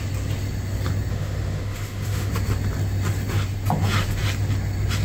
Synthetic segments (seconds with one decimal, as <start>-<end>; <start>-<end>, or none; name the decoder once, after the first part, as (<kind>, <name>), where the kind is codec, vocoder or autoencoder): 1.1-2.3 (autoencoder, DAC-VAE)